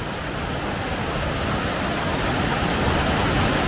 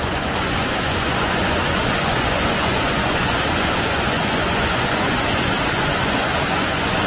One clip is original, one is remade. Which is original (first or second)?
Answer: first